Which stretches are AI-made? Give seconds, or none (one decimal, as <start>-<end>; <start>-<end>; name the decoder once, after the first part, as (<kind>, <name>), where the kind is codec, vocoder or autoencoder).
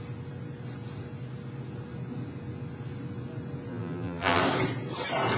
3.7-4.4 (vocoder, BigVGAN v2)